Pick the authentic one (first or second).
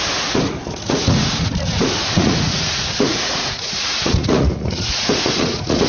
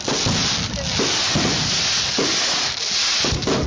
second